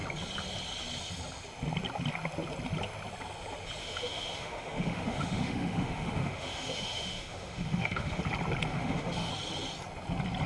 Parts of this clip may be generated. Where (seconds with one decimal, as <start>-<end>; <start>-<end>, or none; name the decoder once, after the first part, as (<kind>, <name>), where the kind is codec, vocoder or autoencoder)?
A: 3.8-8.2 (autoencoder, DAC-VAE); 8.7-9.3